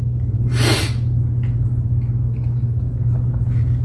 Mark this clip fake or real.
real